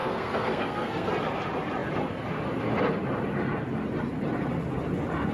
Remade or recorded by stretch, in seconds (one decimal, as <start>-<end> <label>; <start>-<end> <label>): 0.0-1.1 remade; 1.1-5.3 recorded